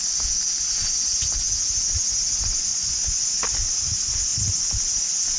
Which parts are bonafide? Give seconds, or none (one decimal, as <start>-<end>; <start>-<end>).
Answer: 0.0-2.7; 3.3-5.4